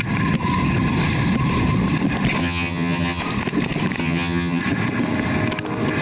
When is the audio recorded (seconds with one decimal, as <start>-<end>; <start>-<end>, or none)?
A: 0.0-2.4; 3.2-4.0; 4.6-6.0